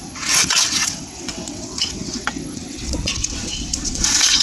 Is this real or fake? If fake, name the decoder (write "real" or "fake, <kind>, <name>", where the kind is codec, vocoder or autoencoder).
fake, vocoder, WaveNeXt